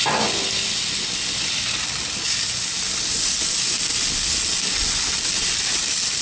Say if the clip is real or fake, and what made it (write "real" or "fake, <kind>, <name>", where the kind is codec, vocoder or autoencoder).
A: real